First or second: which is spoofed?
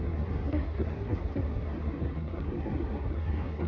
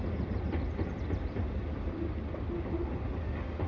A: first